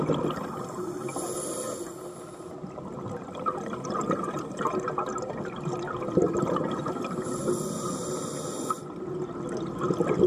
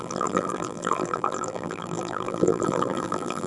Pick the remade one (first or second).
second